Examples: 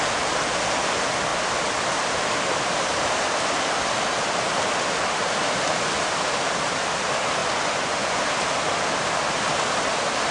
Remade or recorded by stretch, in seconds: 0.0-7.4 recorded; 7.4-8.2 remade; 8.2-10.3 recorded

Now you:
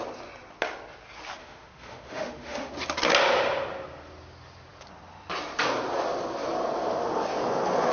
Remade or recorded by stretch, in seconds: 0.0-1.4 recorded; 1.4-2.7 remade; 2.7-7.9 recorded

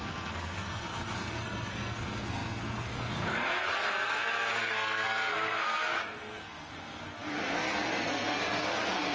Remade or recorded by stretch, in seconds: 0.0-9.1 remade